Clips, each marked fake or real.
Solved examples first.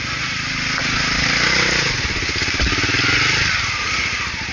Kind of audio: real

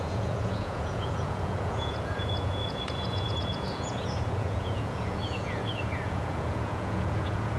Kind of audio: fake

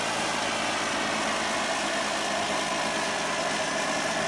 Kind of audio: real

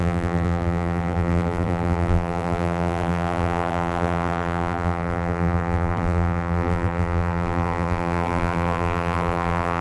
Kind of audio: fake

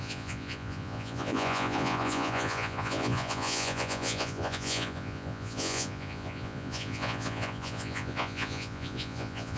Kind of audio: fake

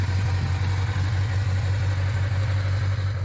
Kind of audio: real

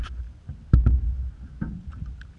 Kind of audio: real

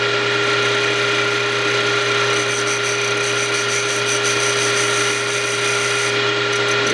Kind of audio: real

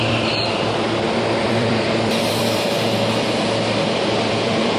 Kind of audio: fake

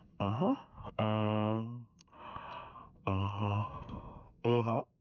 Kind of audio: fake